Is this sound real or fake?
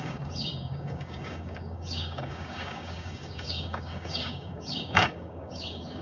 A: fake